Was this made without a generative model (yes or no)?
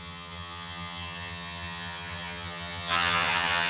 no